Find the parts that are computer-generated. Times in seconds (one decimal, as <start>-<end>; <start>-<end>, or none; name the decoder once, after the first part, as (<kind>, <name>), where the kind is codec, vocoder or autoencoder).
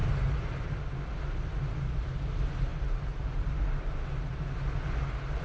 none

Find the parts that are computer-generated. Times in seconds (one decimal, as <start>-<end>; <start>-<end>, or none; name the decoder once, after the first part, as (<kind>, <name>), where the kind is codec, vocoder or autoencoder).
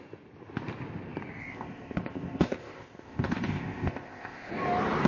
1.4-4.5 (codec, ZipCodec)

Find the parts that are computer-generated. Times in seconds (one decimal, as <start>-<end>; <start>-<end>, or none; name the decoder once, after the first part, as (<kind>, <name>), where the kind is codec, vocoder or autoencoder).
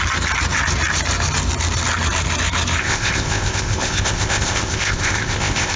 2.8-5.8 (codec, ZipCodec)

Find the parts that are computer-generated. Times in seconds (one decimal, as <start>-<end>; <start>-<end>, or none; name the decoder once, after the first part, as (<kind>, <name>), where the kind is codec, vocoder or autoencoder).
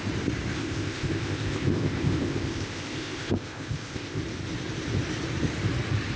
0.5-4.2 (codec, ZipCodec)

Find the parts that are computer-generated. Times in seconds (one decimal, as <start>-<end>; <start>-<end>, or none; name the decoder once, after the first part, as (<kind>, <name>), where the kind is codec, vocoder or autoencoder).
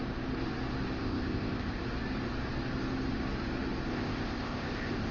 1.0-1.8 (codec, ZipCodec); 3.9-5.1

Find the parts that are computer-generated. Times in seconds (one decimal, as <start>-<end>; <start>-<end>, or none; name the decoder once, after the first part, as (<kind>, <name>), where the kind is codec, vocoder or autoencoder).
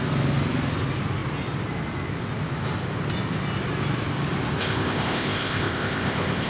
4.6-6.5 (codec, ZipCodec)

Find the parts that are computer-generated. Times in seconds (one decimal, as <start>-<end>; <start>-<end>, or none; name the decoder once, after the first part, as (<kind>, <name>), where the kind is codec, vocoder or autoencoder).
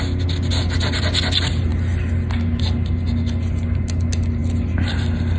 none